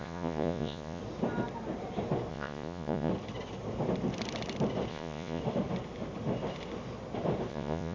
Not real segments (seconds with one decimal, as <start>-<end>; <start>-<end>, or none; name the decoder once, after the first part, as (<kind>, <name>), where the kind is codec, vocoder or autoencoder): 0.0-1.0 (vocoder, Vocos); 2.3-3.1; 4.9-5.4; 7.5-7.9